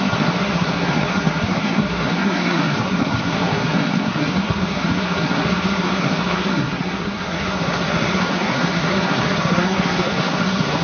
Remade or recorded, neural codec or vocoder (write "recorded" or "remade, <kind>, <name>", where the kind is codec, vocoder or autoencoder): remade, codec, SNAC